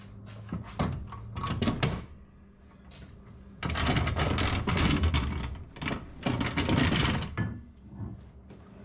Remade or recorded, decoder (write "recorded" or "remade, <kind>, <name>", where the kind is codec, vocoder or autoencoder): recorded